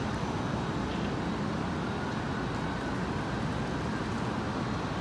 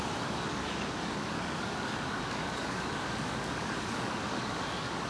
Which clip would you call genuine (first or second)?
first